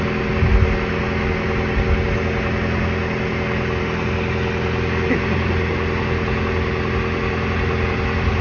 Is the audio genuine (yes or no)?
yes